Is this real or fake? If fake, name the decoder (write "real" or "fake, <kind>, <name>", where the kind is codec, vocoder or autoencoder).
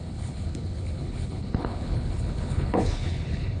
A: fake, codec, HILCodec